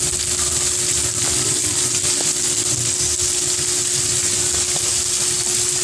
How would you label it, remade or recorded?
recorded